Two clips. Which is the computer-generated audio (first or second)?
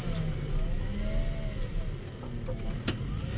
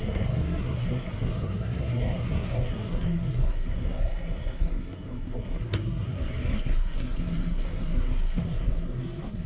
second